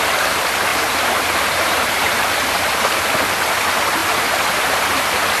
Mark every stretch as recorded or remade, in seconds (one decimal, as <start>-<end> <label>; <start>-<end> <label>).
0.0-0.7 recorded; 0.7-3.0 remade; 3.0-4.0 recorded; 4.0-5.0 remade; 5.0-5.4 recorded